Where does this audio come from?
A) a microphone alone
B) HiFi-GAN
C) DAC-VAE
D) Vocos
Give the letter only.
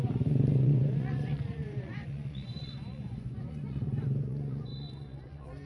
D